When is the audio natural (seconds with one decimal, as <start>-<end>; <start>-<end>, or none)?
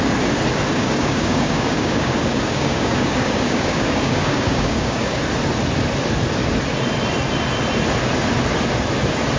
0.0-0.7; 5.2-9.4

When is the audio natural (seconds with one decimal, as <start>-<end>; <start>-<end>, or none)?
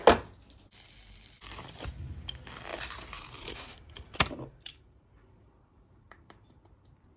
0.0-2.7; 6.6-7.2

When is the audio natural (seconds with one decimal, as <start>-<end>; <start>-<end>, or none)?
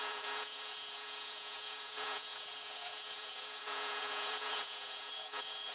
none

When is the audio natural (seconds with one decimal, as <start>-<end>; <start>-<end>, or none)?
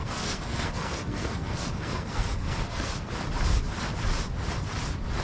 3.1-5.2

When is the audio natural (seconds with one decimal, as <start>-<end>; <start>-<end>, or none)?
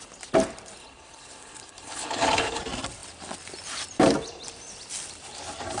0.0-0.8; 2.6-5.8